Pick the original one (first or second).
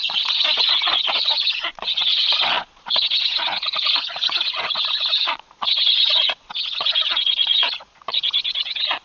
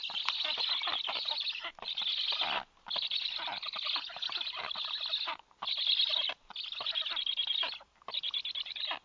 second